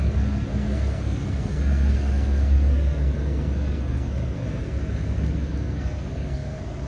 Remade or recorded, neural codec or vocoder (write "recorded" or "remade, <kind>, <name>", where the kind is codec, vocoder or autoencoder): remade, codec, SNAC